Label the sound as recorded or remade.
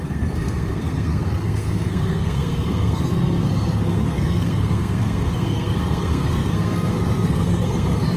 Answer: remade